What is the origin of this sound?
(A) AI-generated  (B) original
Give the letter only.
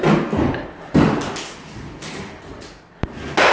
B